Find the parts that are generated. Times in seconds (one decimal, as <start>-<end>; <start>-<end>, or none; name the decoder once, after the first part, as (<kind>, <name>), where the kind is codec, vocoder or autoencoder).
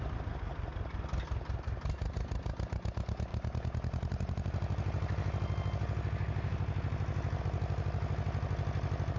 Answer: none